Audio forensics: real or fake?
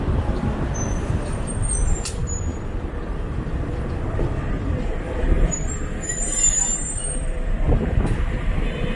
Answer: fake